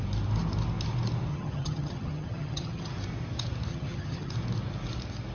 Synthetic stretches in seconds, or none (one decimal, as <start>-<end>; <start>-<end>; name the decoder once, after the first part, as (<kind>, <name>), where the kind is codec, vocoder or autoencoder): 1.3-2.9 (vocoder, HiFi-GAN); 3.7-4.3